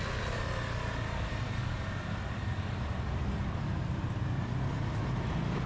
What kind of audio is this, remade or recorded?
recorded